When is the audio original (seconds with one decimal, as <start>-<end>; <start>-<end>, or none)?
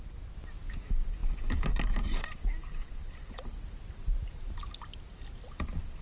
0.0-6.0